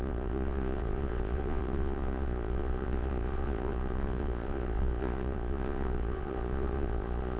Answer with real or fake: fake